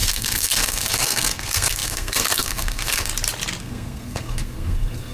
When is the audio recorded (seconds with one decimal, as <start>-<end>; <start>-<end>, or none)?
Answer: 3.1-3.6